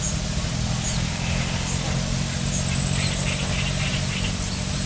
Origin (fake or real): real